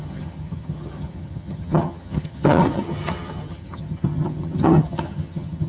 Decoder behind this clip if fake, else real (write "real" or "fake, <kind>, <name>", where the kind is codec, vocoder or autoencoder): fake, vocoder, HiFi-GAN